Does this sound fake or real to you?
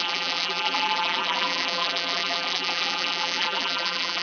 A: fake